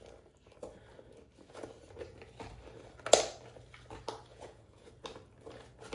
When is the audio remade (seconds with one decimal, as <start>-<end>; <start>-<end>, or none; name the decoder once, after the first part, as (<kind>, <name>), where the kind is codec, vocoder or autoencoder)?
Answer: 4.3-4.9 (vocoder, Vocos)

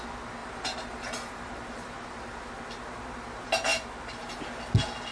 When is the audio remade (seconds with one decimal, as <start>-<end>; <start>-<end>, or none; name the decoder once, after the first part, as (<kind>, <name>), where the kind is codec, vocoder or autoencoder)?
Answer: 0.4-2.5 (vocoder, BigVGAN v2)

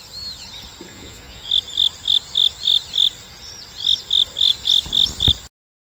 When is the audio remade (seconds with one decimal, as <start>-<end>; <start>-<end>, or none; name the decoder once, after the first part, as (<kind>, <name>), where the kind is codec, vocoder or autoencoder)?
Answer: 0.9-1.5 (vocoder, Vocos)

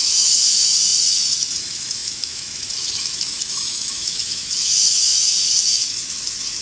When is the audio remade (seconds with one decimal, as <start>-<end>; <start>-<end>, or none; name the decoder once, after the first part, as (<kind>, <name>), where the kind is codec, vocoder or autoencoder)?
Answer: 0.0-6.6 (autoencoder, DAC-VAE)